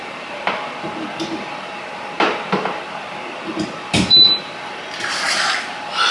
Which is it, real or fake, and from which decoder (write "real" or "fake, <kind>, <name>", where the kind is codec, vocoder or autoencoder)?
fake, vocoder, BigVGAN v2